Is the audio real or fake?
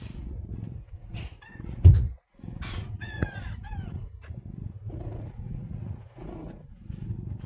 fake